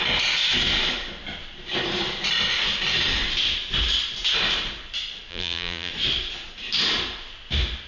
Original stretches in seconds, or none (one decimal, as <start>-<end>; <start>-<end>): 0.0-5.3; 5.9-7.9